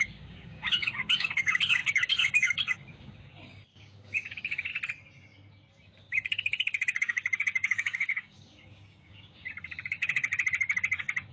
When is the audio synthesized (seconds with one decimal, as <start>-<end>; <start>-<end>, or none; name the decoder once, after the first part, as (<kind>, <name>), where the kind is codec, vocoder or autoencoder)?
0.0-4.7 (codec, DAC); 6.0-10.3